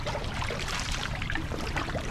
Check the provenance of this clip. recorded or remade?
remade